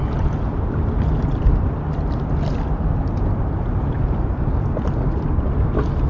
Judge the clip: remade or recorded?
recorded